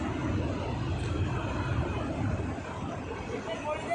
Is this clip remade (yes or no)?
no